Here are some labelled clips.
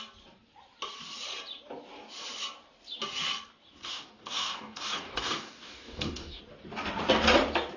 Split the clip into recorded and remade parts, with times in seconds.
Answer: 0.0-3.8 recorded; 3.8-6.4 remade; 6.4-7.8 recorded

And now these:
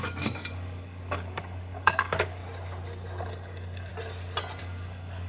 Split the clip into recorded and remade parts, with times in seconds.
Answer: 0.0-2.4 remade; 2.4-3.2 recorded; 3.2-3.9 remade; 3.9-4.6 recorded; 4.6-5.3 remade

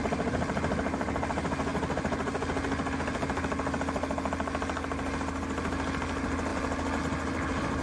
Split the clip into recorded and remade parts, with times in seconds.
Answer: 0.0-7.8 recorded